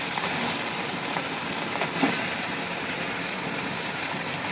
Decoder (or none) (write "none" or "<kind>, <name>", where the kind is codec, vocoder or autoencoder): vocoder, BigVGAN v2